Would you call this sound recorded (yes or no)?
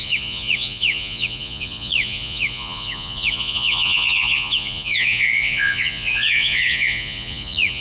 no